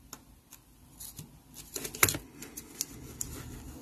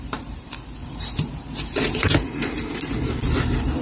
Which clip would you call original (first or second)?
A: first